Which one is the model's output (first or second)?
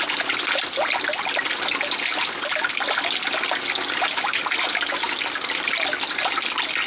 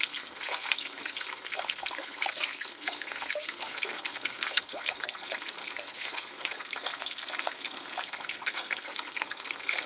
second